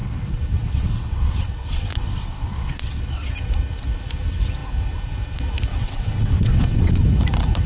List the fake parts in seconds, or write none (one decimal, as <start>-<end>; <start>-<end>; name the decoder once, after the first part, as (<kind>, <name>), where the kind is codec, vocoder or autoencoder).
0.0-3.3 (vocoder, WaveNeXt); 5.7-7.0